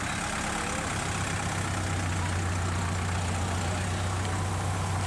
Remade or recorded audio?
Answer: recorded